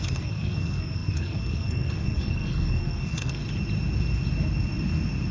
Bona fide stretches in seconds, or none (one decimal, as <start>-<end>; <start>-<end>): 3.4-5.3